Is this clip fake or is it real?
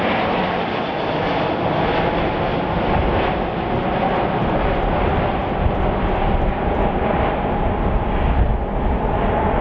real